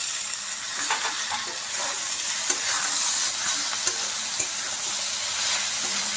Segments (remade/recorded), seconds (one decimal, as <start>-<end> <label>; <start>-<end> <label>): 0.0-0.7 remade; 0.7-4.4 recorded; 4.4-4.9 remade; 4.9-5.6 recorded; 5.6-6.2 remade